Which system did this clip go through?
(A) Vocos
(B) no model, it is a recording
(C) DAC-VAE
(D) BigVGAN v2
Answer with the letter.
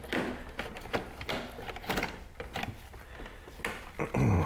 B